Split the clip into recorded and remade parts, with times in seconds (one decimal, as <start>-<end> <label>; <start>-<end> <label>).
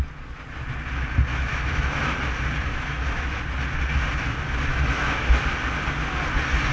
0.0-1.3 recorded; 1.3-2.2 remade; 2.2-2.7 recorded; 2.7-3.4 remade; 3.4-4.7 recorded; 4.7-5.4 remade; 5.4-6.7 recorded